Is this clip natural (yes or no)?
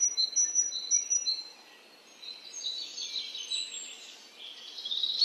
yes